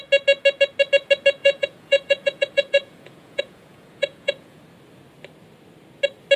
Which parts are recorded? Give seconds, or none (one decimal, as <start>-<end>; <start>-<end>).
0.0-1.4; 4.6-6.4